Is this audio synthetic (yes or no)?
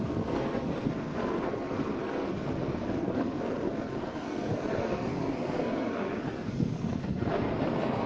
yes